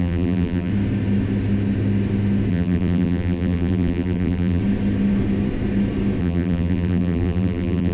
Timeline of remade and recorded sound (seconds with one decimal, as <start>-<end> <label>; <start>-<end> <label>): 0.0-0.7 remade; 0.7-2.5 recorded; 2.5-4.6 remade; 4.6-6.2 recorded; 6.2-7.9 remade